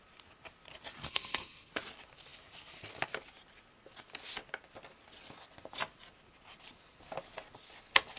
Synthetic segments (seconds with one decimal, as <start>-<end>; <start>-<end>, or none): 1.0-1.7